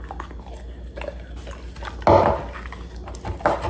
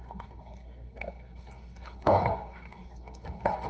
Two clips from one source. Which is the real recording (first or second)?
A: first